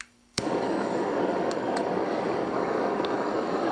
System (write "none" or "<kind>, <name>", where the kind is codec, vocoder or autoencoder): codec, DAC